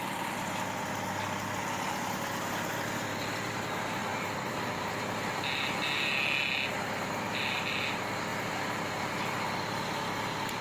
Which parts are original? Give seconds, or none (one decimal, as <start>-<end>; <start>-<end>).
0.0-10.6